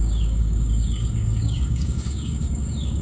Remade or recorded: remade